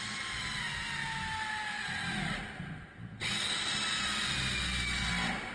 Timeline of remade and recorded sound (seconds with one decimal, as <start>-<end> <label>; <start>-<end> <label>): 0.0-5.5 recorded